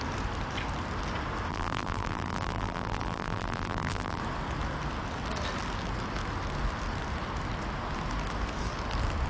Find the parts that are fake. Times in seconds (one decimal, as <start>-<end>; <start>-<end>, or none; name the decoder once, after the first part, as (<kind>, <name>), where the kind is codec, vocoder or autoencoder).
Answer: 1.5-4.2 (vocoder, BigVGAN v2)